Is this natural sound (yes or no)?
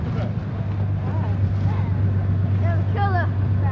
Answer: yes